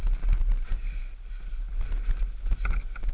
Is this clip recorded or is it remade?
recorded